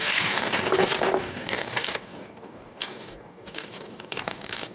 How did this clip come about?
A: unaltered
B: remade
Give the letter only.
B